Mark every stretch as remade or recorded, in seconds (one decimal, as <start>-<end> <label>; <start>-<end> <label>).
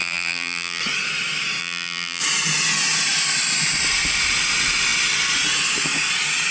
0.0-0.8 remade; 0.8-1.6 recorded; 1.6-2.2 remade; 2.2-6.5 recorded